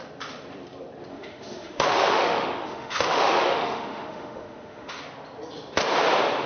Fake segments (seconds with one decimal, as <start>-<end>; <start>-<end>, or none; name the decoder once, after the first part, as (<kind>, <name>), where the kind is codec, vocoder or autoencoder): 1.1-5.0 (autoencoder, DAC-VAE)

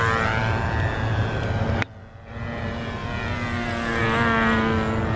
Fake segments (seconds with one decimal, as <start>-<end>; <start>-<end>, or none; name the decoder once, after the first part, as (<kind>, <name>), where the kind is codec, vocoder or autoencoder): none

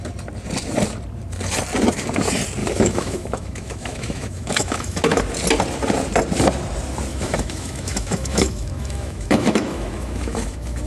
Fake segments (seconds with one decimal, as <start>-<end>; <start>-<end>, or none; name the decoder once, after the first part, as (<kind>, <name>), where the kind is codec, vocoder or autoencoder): 2.6-5.2 (autoencoder, DAC-VAE); 7.1-10.9

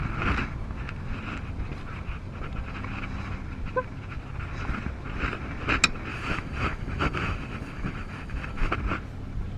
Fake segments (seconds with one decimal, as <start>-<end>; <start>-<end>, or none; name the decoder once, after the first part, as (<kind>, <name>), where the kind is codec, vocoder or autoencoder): 6.1-8.7 (autoencoder, DAC-VAE)

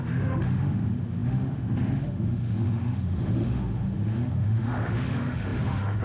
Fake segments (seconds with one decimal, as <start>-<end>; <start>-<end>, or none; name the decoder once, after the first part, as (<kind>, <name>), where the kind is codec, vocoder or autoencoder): 0.0-6.0 (autoencoder, DAC-VAE)